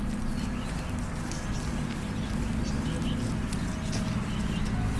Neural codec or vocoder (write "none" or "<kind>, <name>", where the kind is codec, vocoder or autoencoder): none